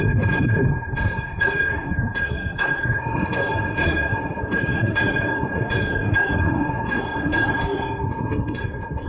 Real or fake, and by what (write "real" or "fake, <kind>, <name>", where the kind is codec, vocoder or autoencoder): fake, codec, SNAC